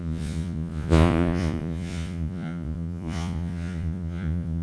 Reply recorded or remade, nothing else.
remade